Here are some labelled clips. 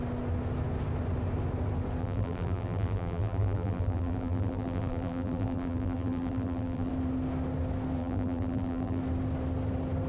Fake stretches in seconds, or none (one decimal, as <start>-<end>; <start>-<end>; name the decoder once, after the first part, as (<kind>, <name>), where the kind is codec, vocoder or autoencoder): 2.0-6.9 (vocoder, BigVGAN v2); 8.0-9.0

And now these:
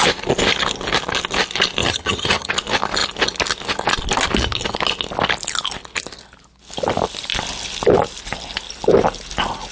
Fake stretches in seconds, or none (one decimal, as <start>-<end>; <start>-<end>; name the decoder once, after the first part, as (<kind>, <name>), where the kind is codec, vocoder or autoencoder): 1.8-2.5 (vocoder, HiFi-GAN)

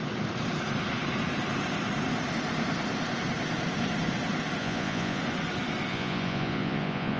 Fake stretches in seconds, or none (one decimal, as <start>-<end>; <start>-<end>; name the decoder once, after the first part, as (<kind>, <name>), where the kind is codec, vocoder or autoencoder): 4.6-5.2 (vocoder, Vocos); 5.9-7.2